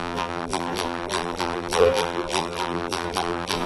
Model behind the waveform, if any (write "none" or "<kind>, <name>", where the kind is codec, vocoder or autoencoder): vocoder, BigVGAN v2